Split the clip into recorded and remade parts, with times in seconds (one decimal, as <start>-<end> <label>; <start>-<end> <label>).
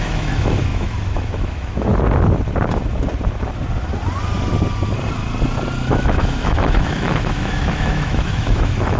0.0-1.9 remade; 1.9-5.9 recorded; 5.9-9.0 remade